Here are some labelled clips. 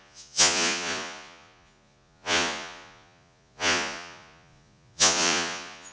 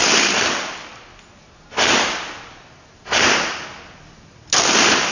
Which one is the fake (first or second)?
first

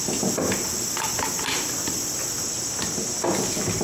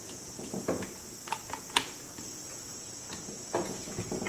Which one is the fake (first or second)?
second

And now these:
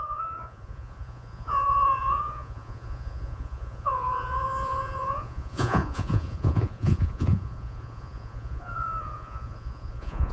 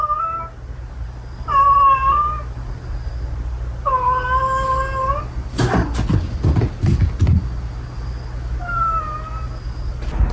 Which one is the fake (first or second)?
first